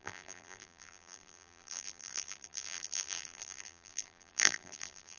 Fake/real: fake